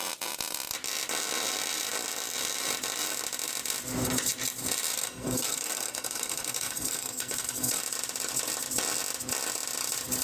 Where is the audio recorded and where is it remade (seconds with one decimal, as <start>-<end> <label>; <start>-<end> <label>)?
0.0-4.9 recorded; 4.9-7.8 remade; 7.8-10.2 recorded